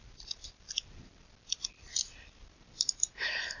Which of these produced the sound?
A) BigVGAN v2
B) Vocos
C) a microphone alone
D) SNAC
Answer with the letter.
C